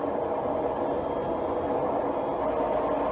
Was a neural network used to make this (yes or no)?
no